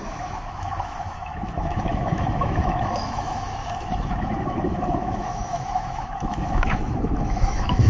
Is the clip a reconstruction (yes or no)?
yes